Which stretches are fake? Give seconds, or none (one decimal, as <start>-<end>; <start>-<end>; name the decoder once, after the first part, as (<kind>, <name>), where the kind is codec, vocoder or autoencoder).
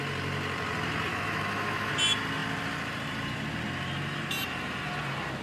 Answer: 1.1-1.9 (autoencoder, DAC-VAE)